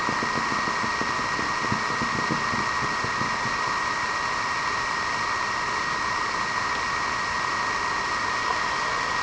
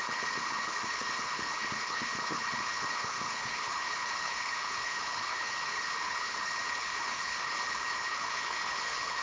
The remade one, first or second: second